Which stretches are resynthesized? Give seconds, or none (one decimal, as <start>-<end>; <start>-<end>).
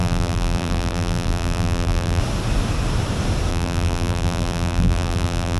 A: 0.0-2.2; 3.5-5.6